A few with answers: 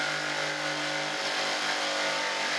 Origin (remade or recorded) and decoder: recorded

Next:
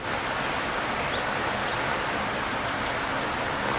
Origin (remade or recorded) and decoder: recorded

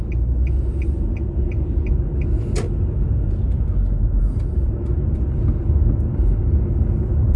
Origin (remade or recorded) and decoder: recorded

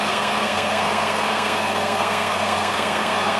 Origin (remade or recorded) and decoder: remade, codec, SNAC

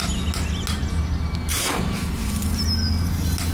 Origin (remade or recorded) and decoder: recorded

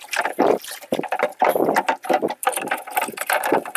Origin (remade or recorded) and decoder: recorded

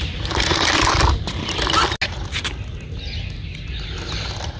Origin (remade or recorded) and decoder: recorded